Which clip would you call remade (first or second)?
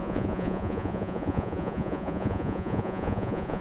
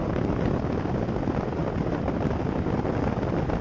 first